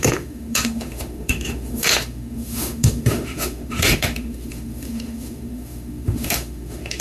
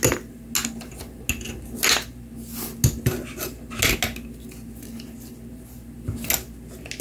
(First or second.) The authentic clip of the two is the second